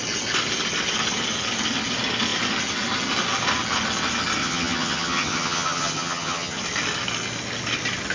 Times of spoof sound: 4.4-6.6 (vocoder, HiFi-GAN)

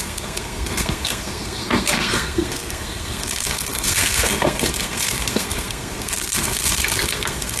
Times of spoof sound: 0.0-7.6 (codec, SNAC)

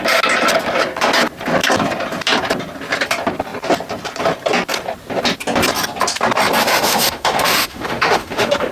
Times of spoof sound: 6.6-8.7 (autoencoder, DAC-VAE)

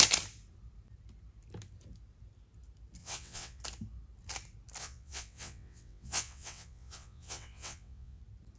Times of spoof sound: 3.0-3.6 (vocoder, WaveNeXt); 4.8-8.2

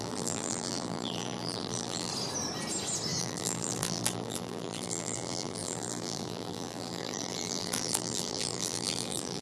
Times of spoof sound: 0.0-2.1 (vocoder, BigVGAN v2); 3.2-9.4

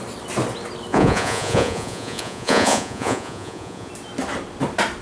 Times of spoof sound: 0.9-3.9 (vocoder, Vocos)

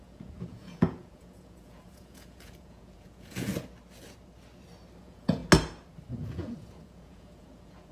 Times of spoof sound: 0.0-3.5 (vocoder, Vocos); 5.0-5.4; 6.1-7.9